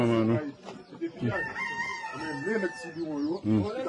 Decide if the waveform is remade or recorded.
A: recorded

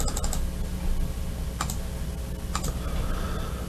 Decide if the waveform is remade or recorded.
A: recorded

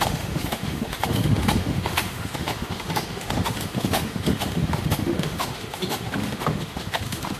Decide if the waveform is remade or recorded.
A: remade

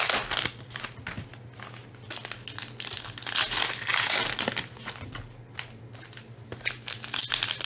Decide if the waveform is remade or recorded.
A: recorded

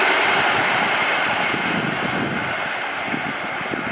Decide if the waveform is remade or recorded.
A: recorded